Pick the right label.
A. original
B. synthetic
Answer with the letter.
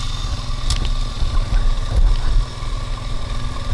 A